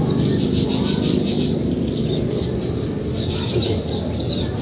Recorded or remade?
recorded